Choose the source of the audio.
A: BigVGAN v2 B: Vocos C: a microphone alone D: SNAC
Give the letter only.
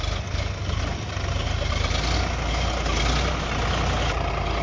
C